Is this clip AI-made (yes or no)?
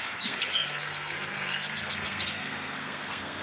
yes